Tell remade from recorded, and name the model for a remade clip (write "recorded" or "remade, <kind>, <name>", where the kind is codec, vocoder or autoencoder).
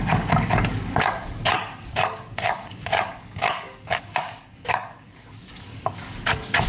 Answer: remade, codec, DAC